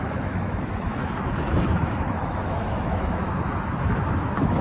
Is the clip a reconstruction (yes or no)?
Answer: yes